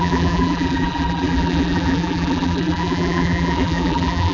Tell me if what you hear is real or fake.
fake